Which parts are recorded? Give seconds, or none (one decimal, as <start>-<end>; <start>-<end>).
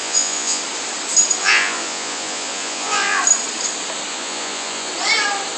0.6-1.4; 3.2-4.1; 4.9-5.6